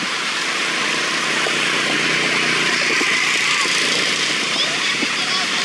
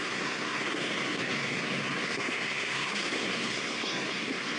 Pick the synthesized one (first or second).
second